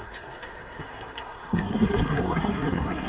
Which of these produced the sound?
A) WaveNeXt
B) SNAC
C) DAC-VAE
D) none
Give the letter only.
B